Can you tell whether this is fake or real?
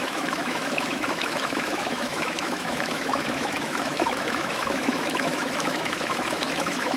fake